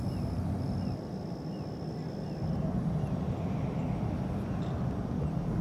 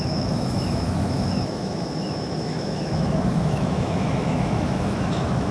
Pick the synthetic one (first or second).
second